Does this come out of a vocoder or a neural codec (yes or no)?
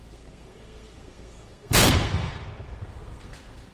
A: yes